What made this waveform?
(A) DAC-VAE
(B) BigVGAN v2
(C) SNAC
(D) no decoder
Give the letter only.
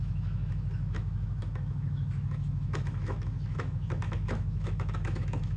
A